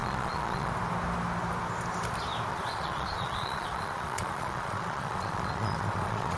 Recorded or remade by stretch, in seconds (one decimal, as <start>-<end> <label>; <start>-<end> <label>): 0.0-0.7 remade; 0.7-2.5 recorded; 2.5-6.4 remade